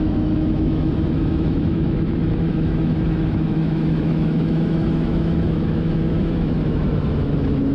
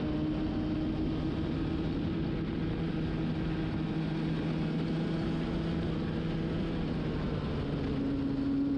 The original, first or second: second